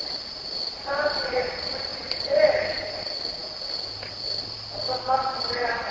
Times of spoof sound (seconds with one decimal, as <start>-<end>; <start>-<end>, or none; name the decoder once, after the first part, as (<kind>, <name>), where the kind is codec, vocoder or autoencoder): none